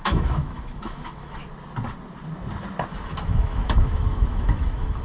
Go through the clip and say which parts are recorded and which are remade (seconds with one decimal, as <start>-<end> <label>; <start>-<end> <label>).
0.0-1.4 remade; 1.4-2.9 recorded; 2.9-5.0 remade